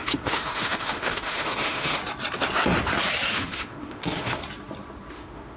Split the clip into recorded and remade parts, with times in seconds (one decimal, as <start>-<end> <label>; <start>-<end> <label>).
0.0-2.0 remade; 2.0-3.3 recorded; 3.3-4.4 remade; 4.4-5.1 recorded; 5.1-5.6 remade